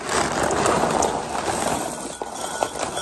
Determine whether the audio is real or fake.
real